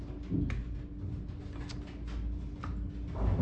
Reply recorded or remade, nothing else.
recorded